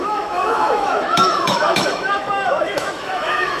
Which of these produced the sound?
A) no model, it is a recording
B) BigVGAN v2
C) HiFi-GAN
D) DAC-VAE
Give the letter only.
D